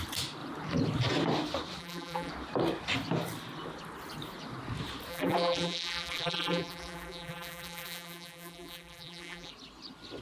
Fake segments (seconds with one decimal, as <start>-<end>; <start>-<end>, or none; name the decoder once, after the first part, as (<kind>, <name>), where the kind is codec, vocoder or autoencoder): 1.8-2.3 (vocoder, BigVGAN v2); 5.1-9.5